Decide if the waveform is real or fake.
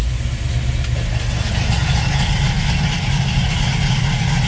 real